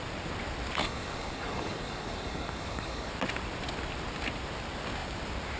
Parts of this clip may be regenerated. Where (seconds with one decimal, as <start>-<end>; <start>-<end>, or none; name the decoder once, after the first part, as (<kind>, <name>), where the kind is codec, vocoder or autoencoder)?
0.8-3.1 (codec, DAC)